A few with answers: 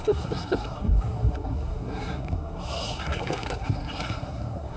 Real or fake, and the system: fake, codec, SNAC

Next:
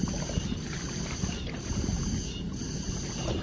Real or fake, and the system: real